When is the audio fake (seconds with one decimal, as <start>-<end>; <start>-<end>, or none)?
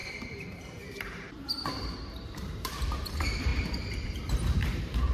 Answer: 0.0-5.1